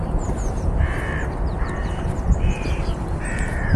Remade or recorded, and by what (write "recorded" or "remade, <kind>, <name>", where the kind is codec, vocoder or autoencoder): remade, vocoder, BigVGAN v2